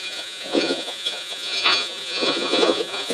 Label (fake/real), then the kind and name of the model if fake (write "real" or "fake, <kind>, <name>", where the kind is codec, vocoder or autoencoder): fake, vocoder, Vocos